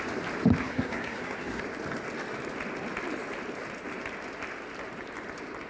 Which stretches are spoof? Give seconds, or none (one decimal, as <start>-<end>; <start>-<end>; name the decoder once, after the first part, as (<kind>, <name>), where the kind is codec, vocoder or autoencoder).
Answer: 0.6-1.6 (codec, SNAC)